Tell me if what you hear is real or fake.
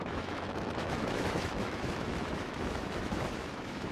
fake